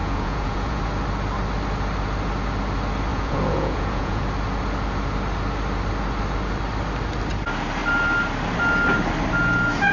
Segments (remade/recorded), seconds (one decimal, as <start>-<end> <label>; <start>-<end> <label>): 0.0-0.8 remade; 0.8-3.1 recorded; 3.1-4.2 remade; 4.2-9.9 recorded